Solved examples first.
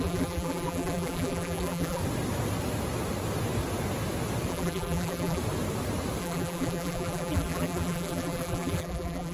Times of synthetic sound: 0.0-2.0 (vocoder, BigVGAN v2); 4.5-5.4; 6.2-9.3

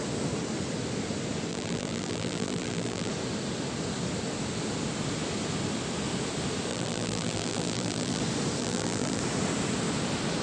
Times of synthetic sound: 1.5-3.1 (vocoder, BigVGAN v2); 6.7-8.2; 8.6-9.2